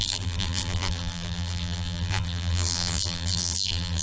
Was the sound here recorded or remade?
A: remade